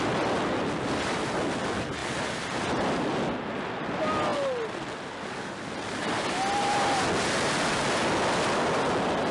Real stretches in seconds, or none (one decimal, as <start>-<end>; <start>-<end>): 0.0-9.3